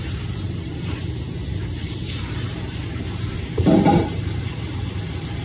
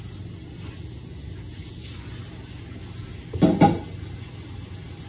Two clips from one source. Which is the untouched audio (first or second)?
second